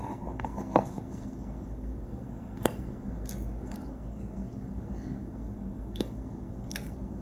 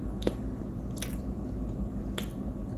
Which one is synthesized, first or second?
first